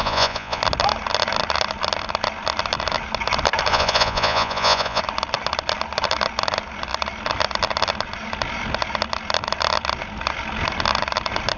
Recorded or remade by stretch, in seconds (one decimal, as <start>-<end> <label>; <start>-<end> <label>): 0.0-0.6 remade; 0.6-3.7 recorded; 3.7-5.0 remade; 5.0-11.6 recorded